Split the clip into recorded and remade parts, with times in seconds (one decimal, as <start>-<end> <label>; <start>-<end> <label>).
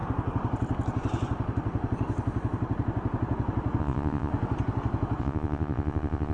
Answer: 0.0-3.8 recorded; 3.8-4.3 remade; 4.3-5.2 recorded; 5.2-6.3 remade